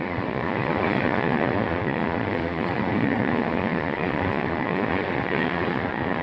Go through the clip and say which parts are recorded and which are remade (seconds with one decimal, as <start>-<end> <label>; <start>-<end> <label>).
0.0-6.2 remade